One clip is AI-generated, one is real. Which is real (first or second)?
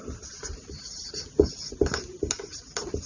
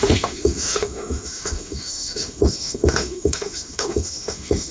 first